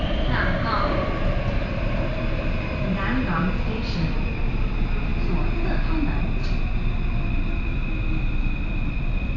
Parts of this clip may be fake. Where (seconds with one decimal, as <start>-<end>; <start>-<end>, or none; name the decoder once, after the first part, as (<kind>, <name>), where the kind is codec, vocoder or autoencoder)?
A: 0.0-5.1 (vocoder, BigVGAN v2); 7.3-9.4